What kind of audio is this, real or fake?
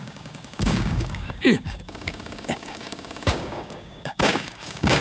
fake